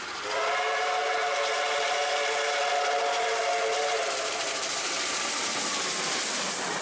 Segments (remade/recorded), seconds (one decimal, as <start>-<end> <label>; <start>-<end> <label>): 0.0-6.8 recorded